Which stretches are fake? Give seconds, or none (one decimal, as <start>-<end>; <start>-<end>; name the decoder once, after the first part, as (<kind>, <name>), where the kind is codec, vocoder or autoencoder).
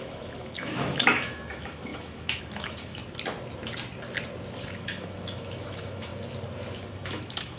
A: 0.0-3.0 (autoencoder, DAC-VAE); 4.6-6.1; 6.9-7.6